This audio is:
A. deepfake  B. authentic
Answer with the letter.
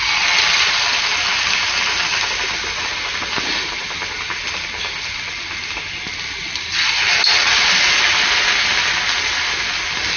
B